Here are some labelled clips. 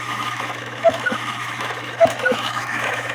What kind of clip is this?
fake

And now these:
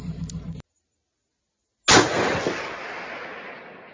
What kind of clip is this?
real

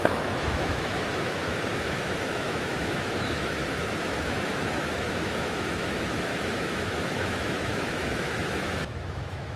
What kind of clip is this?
fake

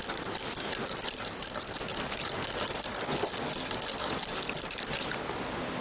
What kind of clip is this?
real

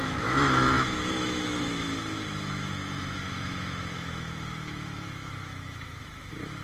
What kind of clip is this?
fake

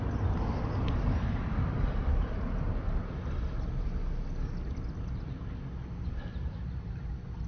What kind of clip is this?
real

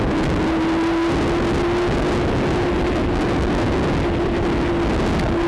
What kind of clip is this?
real